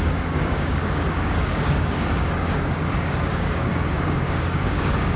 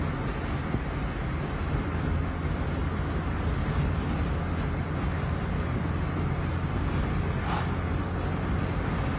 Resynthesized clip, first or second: first